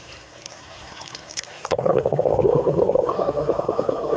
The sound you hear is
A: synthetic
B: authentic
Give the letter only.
A